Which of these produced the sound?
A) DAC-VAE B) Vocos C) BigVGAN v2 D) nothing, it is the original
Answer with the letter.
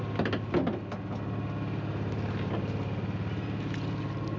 D